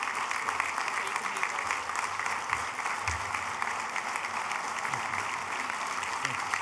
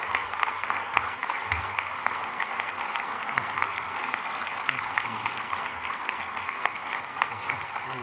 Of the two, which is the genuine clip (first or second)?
first